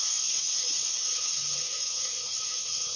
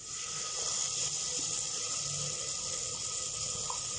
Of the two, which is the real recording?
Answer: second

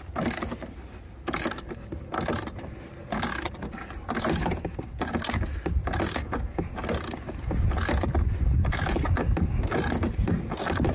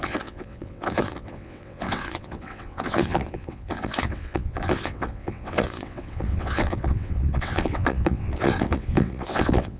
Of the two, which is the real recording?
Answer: first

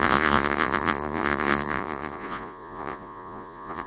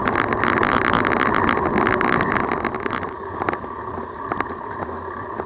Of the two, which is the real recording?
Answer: second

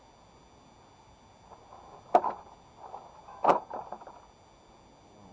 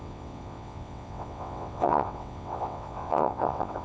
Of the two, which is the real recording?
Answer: first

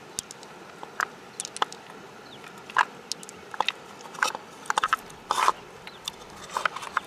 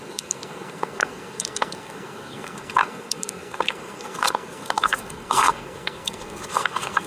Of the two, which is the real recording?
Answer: first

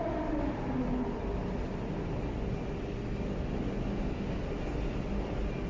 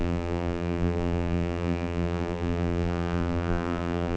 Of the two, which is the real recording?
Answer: first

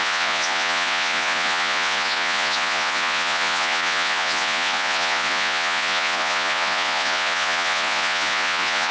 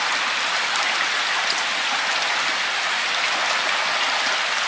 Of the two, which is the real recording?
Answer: second